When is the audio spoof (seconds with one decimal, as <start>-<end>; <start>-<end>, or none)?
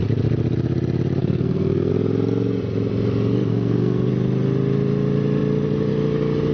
1.2-1.9; 3.5-4.1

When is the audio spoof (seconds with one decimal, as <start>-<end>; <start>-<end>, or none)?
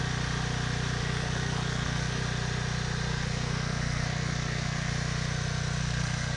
1.0-2.2; 3.1-4.9; 5.8-6.4